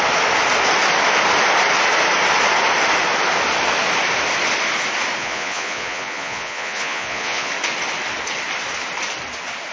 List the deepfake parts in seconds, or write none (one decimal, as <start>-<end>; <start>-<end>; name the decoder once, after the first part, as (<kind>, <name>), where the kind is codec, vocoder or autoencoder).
5.2-7.5 (vocoder, Vocos)